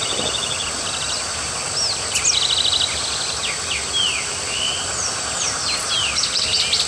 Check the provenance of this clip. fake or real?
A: real